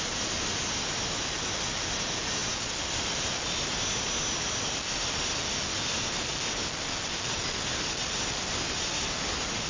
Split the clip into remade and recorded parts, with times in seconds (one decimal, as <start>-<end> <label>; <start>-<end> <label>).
0.0-9.7 recorded